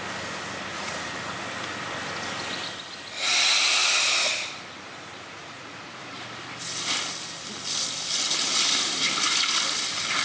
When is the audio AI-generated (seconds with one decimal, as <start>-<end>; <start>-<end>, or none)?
0.7-1.2; 5.3-6.0